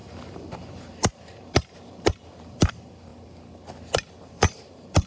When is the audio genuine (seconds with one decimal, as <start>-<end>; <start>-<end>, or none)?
3.1-4.2